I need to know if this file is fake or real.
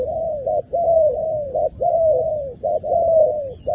fake